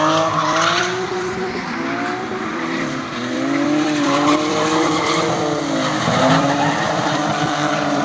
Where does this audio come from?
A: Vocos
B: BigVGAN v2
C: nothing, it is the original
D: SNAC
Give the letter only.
B